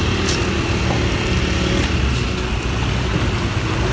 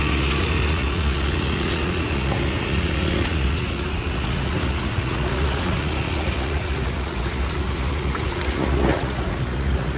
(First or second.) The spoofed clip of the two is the second